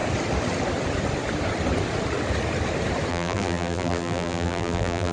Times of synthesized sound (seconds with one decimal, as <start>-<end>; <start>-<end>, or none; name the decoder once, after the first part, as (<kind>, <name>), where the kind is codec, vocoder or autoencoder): 3.1-5.1 (vocoder, BigVGAN v2)